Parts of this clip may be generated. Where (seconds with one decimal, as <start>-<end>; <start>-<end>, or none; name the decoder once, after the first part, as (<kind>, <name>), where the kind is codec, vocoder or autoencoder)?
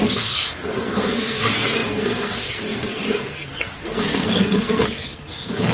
0.0-5.7 (codec, SNAC)